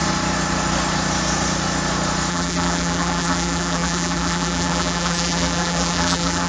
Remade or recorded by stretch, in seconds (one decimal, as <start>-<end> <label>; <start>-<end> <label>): 0.0-2.3 recorded; 2.3-6.5 remade